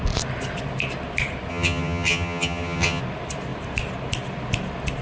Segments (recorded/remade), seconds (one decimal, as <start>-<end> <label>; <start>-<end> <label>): 0.0-1.5 recorded; 1.5-3.0 remade; 3.0-5.0 recorded